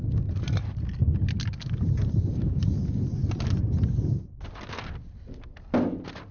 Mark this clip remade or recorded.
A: recorded